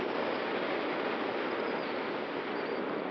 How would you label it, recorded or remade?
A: recorded